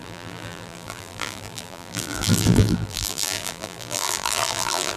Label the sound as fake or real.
fake